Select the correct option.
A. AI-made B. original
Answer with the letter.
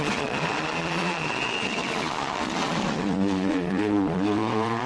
A